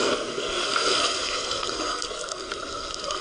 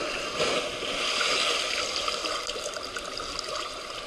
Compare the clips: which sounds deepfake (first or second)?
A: first